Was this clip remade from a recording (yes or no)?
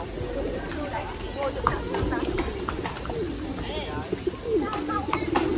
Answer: no